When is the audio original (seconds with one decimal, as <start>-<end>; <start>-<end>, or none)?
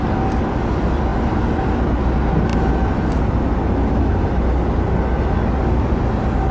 0.0-6.5